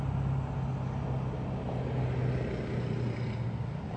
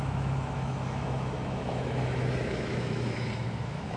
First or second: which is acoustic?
first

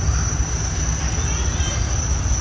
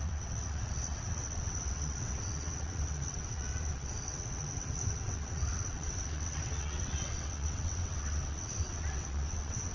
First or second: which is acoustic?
first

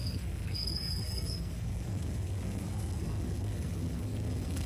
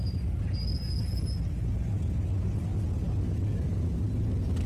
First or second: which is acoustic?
second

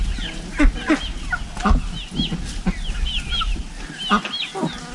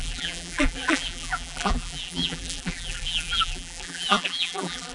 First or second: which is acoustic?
first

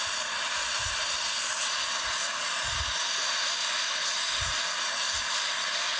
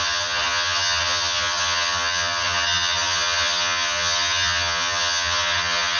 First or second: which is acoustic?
first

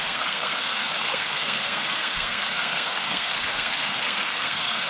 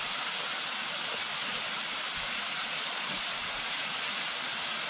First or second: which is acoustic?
second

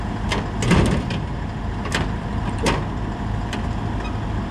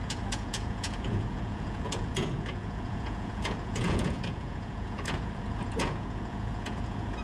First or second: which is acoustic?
first